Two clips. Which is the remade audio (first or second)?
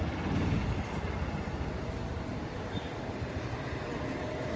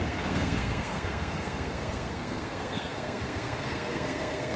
second